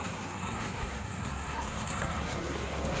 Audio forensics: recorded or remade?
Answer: remade